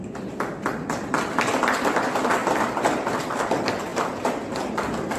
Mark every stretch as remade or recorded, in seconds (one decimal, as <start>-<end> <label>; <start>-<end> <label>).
0.0-5.2 recorded